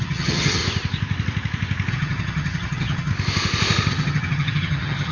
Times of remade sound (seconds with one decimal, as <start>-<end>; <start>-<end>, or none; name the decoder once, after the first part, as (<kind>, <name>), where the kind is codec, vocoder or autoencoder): 0.0-0.6 (vocoder, HiFi-GAN); 1.9-3.1; 3.9-5.1